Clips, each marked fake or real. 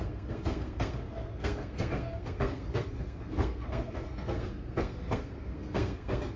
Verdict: fake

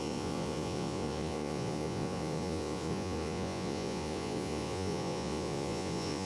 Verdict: fake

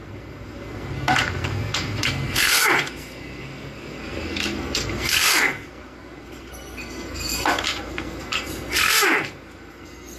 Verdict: fake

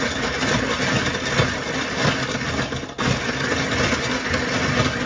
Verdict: real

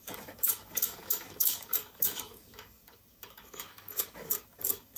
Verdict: fake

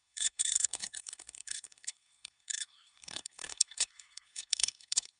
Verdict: fake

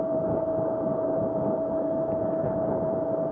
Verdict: real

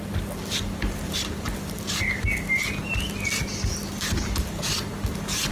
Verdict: real